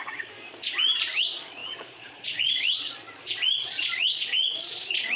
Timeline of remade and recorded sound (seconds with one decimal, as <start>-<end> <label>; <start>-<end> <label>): 0.0-0.6 remade; 0.6-1.2 recorded; 1.2-3.0 remade; 3.0-3.5 recorded; 3.5-5.2 remade